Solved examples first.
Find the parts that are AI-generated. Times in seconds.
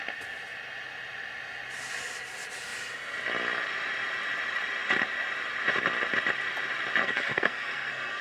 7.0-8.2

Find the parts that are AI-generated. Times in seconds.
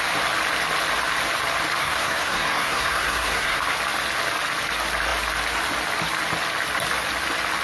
1.8-3.6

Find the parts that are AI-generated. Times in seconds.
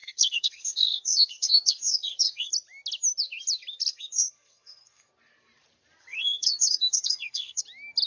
0.0-2.5; 3.9-5.1; 6.0-7.6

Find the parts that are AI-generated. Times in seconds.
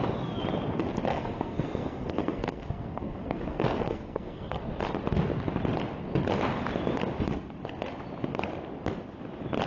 1.1-4.7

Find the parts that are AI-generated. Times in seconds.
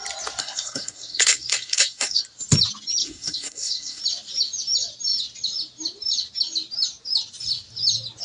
0.4-2.2; 3.0-4.0